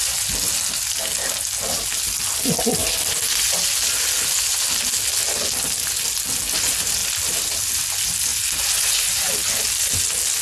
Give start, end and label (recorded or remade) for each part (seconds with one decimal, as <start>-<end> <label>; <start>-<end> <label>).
0.0-10.4 recorded